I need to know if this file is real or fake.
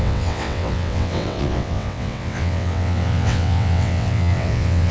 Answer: fake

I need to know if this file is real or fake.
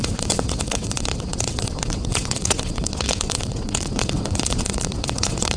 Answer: fake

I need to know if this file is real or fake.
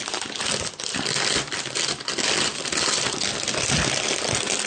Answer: real